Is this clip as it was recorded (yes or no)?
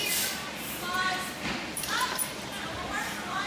no